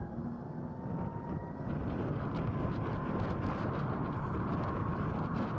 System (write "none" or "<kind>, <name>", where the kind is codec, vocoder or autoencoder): none